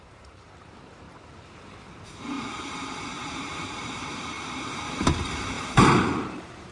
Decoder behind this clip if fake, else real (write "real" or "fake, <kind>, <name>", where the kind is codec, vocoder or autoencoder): fake, vocoder, BigVGAN v2